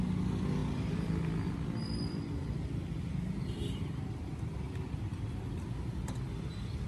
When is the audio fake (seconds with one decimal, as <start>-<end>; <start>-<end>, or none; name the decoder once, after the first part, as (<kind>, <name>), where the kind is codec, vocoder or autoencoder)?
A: 0.6-4.4 (vocoder, BigVGAN v2)